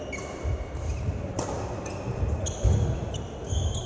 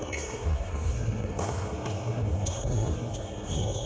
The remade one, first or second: second